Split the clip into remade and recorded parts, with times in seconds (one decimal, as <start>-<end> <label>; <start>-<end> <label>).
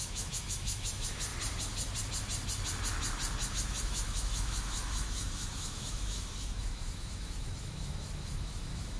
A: 0.0-1.3 remade; 1.3-3.5 recorded; 3.5-9.0 remade